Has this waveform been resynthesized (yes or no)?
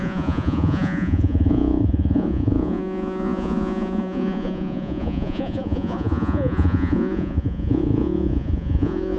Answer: yes